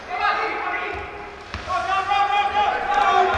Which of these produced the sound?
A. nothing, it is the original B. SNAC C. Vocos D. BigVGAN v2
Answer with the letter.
A